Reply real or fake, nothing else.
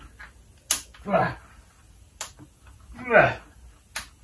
real